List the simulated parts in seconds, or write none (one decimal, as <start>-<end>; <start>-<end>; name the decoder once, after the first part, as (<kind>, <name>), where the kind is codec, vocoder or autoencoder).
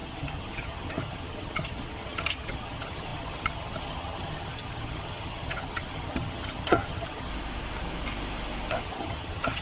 0.0-7.3 (vocoder, HiFi-GAN); 8.8-9.6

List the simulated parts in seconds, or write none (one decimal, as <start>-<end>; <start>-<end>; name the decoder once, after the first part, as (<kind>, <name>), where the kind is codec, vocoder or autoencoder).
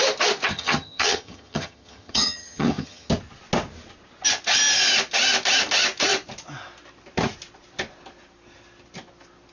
0.5-3.1 (vocoder, HiFi-GAN)